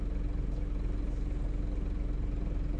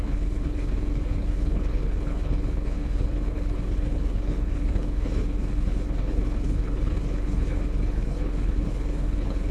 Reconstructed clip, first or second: second